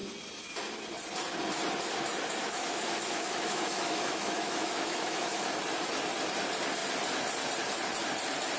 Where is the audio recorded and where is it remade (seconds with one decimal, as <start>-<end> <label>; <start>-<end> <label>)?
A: 0.0-2.4 recorded; 2.4-5.5 remade; 5.5-8.6 recorded